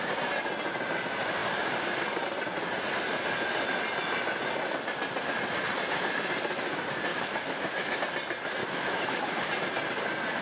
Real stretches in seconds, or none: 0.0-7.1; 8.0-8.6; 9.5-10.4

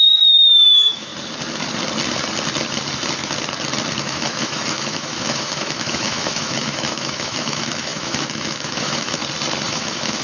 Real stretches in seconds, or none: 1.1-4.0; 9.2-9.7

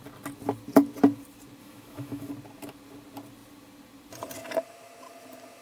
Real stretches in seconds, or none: 0.0-1.6; 2.3-5.6

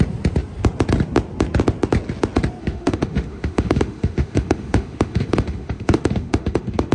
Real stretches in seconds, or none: 0.0-2.6

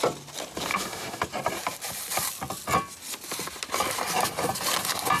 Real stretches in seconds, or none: 0.0-0.7; 1.2-5.2

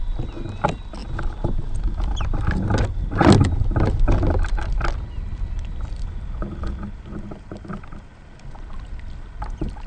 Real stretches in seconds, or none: 0.0-9.9

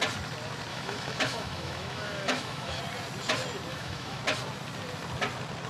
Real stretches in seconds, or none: 0.0-0.7; 2.8-3.7; 4.2-5.7

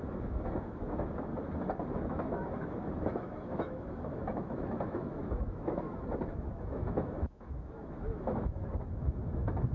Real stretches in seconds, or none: 1.3-2.1